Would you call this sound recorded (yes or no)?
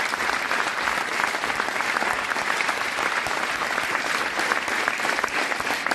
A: yes